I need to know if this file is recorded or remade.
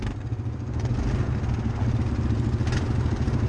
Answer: recorded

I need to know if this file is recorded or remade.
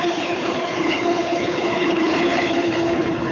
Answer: remade